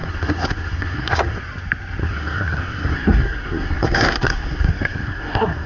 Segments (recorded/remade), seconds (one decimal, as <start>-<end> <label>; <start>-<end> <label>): 0.0-1.4 remade; 1.4-2.0 recorded; 2.0-5.7 remade